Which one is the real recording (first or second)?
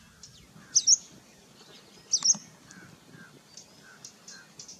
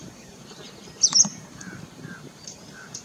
first